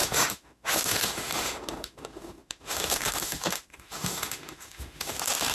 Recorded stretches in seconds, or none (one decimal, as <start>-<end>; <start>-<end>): none